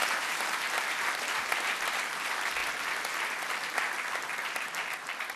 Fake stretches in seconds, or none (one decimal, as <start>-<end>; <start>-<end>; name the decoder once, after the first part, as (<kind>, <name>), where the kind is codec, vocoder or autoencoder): 0.0-1.8 (vocoder, BigVGAN v2)